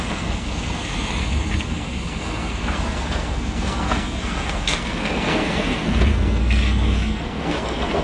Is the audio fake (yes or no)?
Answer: yes